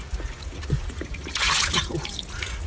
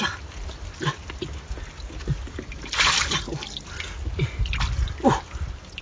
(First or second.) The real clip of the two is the second